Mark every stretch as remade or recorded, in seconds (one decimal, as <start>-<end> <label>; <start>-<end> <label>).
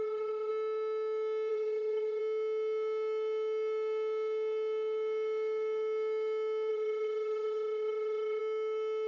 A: 0.0-0.5 remade; 0.5-1.5 recorded; 1.5-2.2 remade; 2.2-6.7 recorded; 6.7-8.4 remade; 8.4-9.1 recorded